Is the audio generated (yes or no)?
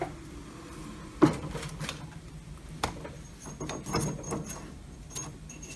no